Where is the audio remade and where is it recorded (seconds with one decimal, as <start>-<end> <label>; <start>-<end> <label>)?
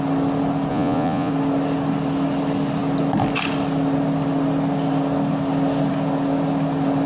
0.0-0.7 recorded; 0.7-1.3 remade; 1.3-7.1 recorded